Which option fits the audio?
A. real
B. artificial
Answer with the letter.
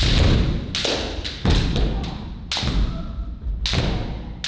A